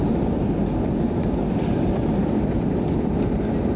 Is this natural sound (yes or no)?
yes